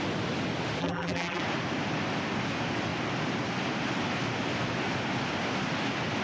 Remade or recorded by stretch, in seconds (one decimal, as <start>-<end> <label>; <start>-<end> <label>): 0.0-0.8 recorded; 0.8-1.4 remade; 1.4-6.2 recorded